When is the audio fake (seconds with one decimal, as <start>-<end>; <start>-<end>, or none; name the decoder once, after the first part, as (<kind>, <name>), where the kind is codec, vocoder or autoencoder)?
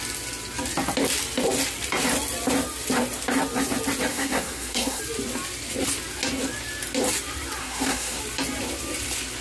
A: 4.1-5.0 (codec, SNAC); 7.6-8.2